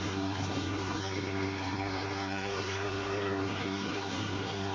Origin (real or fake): fake